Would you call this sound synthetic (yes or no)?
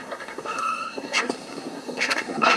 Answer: yes